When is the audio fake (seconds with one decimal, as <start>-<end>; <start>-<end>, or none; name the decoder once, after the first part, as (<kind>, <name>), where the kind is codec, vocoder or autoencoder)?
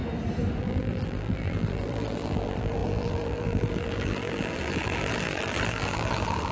0.6-6.5 (vocoder, BigVGAN v2)